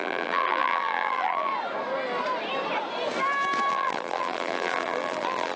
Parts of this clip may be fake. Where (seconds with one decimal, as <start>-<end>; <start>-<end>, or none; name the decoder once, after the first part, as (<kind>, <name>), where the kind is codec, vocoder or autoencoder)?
0.0-1.5 (vocoder, BigVGAN v2); 3.7-5.6